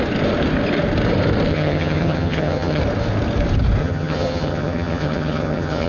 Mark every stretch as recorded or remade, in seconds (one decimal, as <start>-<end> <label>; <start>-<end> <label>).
0.0-1.5 recorded; 1.5-2.8 remade; 2.8-3.8 recorded; 3.8-5.9 remade